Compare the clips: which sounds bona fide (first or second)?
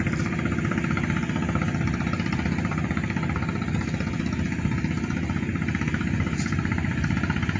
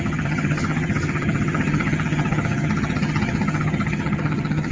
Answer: first